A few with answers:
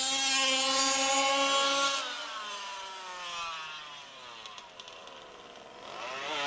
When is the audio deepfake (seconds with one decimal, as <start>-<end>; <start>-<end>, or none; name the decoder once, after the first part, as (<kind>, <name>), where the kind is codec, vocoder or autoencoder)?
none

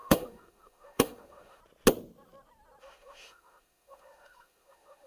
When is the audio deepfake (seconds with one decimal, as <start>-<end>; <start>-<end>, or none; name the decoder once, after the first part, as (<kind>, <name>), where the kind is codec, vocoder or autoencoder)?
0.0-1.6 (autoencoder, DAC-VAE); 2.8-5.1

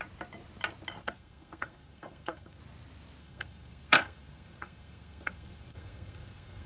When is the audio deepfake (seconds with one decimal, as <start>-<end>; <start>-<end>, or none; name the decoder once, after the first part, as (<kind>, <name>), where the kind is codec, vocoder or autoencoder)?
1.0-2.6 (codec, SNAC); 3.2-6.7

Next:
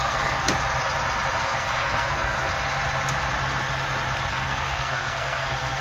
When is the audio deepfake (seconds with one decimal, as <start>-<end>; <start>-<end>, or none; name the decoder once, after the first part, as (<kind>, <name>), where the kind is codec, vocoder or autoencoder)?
0.0-0.5 (codec, SNAC); 1.4-2.5; 4.3-5.8

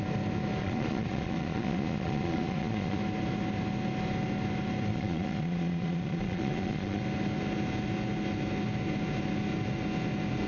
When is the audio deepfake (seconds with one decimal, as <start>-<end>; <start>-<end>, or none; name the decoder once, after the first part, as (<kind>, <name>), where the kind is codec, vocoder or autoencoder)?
0.6-3.0 (vocoder, Vocos); 4.9-7.0

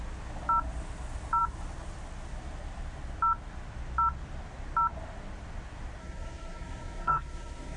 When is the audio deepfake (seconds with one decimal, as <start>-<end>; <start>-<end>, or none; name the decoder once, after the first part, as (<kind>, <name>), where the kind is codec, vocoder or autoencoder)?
6.0-7.8 (codec, SNAC)

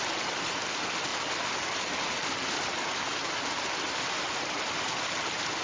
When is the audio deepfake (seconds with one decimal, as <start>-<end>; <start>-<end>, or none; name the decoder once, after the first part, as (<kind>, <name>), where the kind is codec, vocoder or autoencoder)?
none

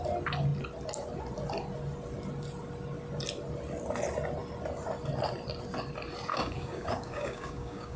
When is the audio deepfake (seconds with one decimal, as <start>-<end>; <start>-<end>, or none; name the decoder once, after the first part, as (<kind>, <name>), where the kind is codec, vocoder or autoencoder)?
6.3-8.0 (codec, DAC)